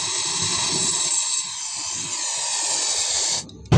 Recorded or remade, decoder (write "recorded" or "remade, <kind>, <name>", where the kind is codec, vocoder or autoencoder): recorded